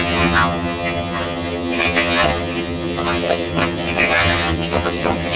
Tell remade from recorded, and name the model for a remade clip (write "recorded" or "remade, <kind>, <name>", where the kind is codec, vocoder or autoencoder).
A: remade, vocoder, HiFi-GAN